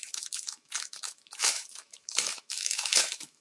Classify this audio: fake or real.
fake